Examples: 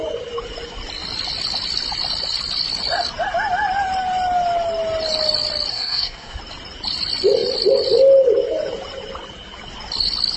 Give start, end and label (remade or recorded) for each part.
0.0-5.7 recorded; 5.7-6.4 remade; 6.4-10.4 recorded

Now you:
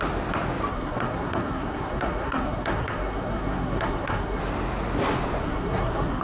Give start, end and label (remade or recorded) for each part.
0.0-0.7 recorded; 0.7-4.4 remade; 4.4-5.4 recorded; 5.4-6.2 remade

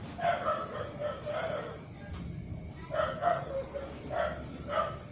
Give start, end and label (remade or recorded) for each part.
0.0-3.1 recorded; 3.1-3.8 remade; 3.8-5.1 recorded

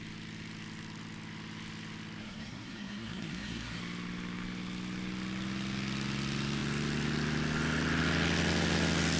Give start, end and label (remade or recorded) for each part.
0.0-2.2 recorded; 2.2-3.8 remade; 3.8-9.2 recorded

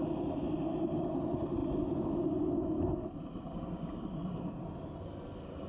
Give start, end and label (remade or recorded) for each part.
0.0-5.7 recorded

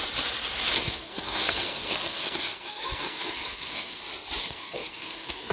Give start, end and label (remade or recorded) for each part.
0.0-0.7 recorded; 0.7-4.0 remade; 4.0-4.4 recorded; 4.4-5.5 remade